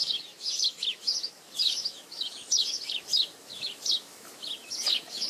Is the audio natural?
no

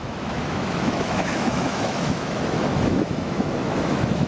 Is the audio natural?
no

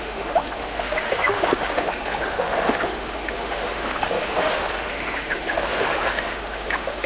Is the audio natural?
no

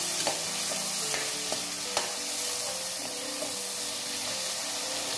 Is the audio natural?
yes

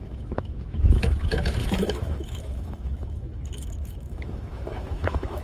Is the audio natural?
no